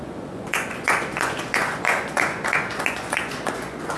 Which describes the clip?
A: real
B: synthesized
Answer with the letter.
B